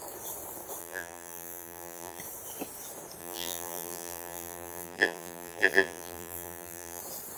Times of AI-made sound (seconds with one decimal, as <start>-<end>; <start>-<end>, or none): 0.8-2.2; 3.2-7.0